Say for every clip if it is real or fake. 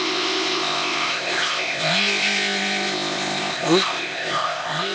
fake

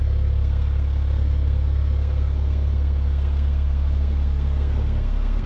fake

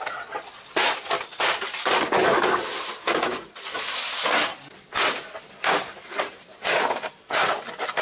real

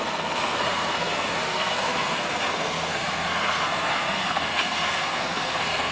fake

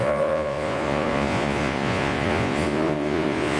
fake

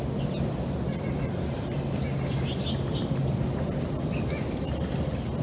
real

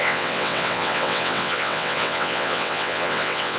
fake